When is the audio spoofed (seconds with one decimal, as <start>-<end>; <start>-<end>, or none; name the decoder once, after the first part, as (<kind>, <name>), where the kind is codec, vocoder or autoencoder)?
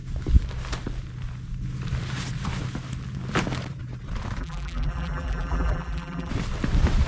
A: 4.4-6.3 (vocoder, BigVGAN v2)